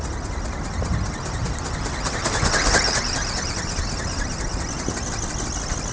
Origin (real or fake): real